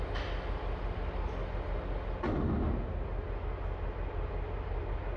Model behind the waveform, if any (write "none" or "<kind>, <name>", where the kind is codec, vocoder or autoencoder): none